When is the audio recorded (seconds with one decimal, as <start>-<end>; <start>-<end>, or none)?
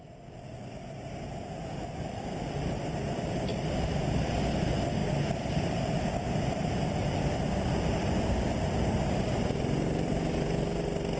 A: 0.0-11.2